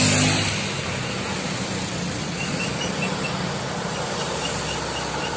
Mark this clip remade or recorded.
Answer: recorded